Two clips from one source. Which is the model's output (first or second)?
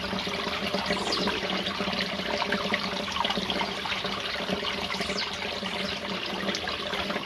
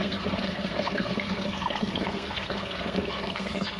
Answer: second